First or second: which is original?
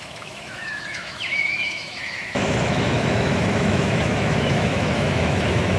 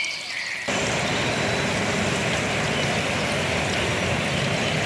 second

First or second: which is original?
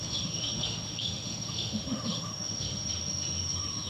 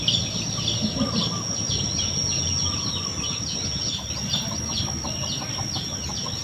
second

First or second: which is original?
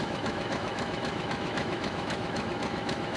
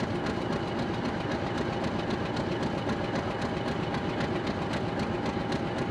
second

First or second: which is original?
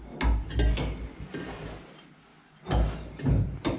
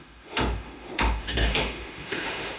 first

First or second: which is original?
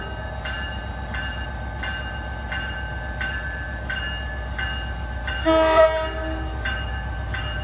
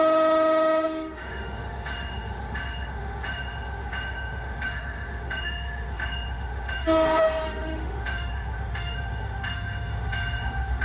first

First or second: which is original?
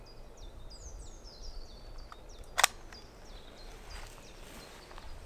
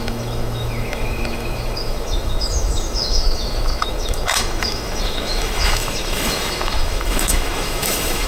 first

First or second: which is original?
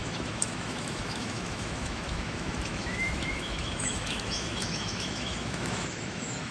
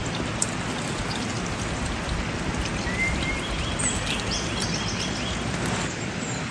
second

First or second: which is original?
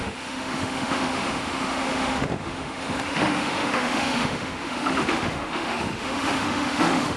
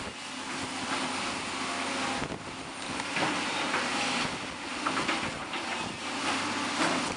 second